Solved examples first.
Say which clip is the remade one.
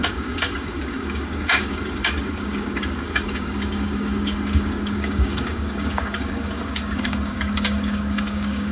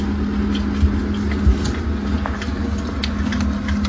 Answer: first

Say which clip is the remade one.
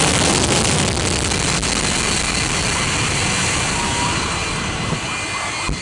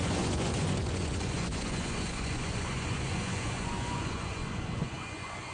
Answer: second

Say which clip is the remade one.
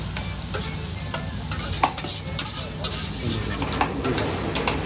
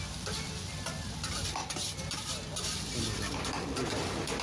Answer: second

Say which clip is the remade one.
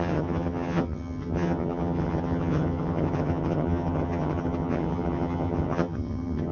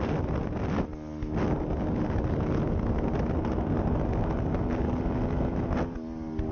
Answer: first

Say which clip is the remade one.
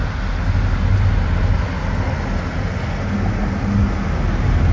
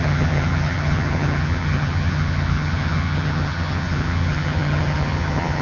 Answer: second